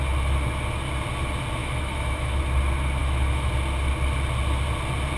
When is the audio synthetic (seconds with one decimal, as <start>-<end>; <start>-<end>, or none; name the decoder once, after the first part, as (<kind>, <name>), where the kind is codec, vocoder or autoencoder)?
1.6-2.4 (autoencoder, DAC-VAE); 3.0-3.5